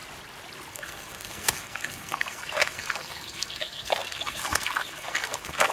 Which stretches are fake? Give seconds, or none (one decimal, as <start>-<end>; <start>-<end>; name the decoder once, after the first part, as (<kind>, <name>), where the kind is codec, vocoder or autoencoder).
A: 0.7-5.7 (codec, SNAC)

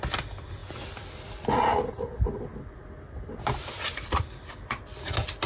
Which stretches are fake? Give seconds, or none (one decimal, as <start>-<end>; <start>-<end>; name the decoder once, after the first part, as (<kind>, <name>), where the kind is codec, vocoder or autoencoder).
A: none

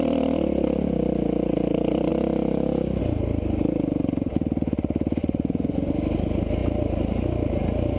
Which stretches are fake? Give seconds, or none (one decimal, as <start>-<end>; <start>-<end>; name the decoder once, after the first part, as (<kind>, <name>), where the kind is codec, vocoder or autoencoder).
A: 5.2-5.9 (vocoder, Vocos)

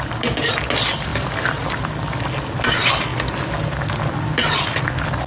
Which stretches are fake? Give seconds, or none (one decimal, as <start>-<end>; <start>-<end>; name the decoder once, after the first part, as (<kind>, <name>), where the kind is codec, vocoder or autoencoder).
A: none

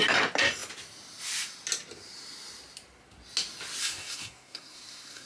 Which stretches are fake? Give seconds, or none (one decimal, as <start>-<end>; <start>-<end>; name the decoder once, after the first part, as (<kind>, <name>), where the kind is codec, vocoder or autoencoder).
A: 3.8-5.3 (codec, SNAC)

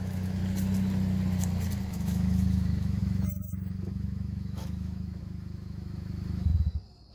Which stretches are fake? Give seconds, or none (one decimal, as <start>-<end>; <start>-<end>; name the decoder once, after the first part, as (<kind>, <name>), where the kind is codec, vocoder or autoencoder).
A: 0.0-0.4 (autoencoder, DAC-VAE); 1.9-6.5